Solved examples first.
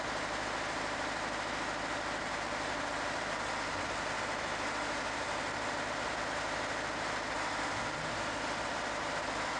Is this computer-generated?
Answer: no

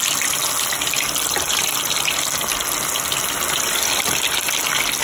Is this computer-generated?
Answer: no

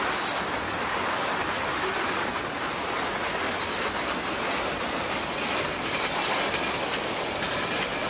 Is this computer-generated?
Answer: no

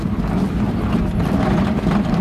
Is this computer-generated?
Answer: no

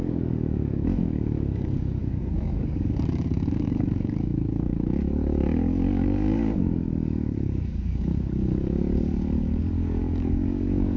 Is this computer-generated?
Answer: yes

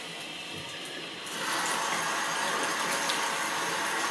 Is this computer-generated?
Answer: no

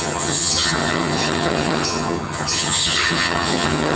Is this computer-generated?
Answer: yes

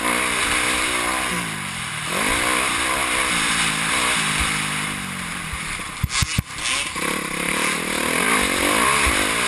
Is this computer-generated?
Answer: no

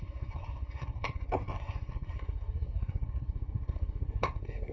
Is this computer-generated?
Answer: yes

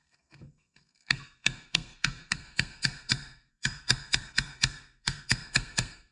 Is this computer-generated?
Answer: yes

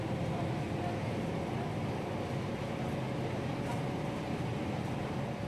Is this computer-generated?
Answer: no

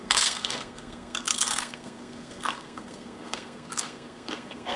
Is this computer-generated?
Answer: yes